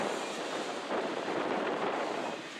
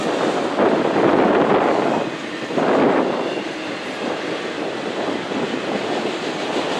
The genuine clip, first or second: second